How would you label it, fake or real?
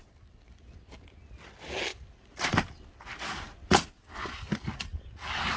real